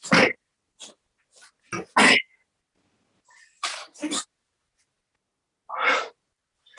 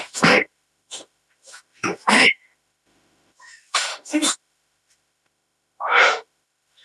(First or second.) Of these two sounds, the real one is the first